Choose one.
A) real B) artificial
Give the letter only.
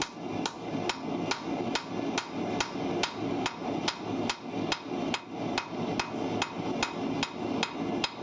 A